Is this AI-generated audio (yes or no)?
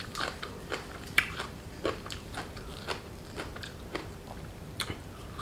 yes